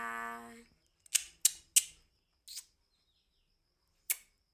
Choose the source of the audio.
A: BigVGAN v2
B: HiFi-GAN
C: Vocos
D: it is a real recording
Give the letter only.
D